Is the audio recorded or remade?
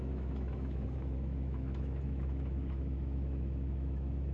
remade